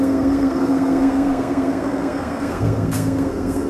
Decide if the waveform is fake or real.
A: fake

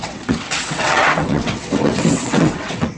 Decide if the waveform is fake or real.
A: fake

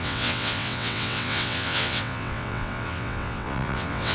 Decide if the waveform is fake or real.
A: fake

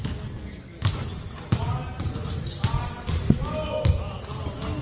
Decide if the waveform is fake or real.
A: real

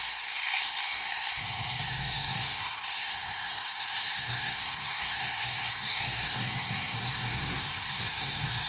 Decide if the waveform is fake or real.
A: fake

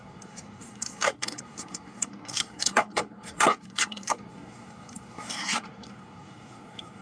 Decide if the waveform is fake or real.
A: fake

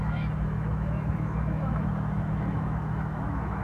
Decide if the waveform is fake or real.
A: fake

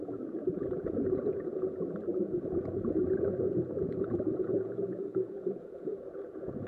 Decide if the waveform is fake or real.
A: fake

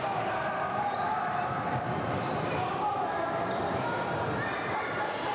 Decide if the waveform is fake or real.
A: real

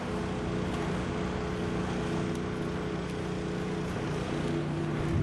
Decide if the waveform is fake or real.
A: real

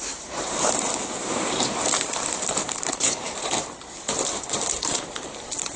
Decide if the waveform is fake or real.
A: fake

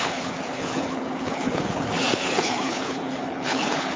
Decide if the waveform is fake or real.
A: fake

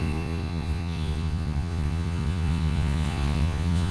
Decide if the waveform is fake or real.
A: fake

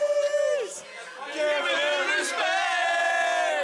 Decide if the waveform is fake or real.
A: real